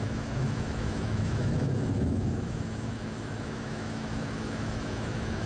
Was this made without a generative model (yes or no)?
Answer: no